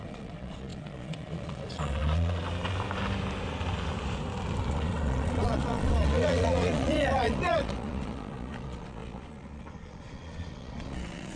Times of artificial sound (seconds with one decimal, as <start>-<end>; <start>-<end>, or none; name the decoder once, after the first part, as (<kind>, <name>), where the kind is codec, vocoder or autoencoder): 0.0-2.4 (vocoder, Vocos); 4.7-11.4